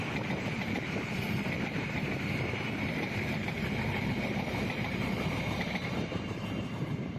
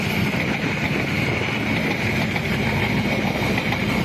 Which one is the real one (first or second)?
second